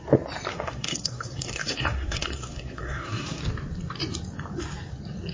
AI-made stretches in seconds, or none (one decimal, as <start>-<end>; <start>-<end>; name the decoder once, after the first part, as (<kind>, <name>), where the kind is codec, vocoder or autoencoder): 0.5-3.4 (codec, SNAC)